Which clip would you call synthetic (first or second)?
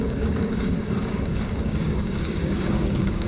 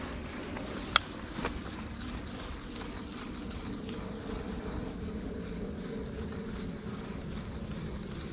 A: first